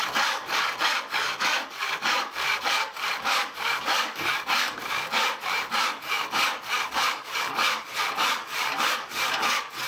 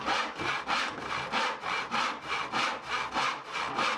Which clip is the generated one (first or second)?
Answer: first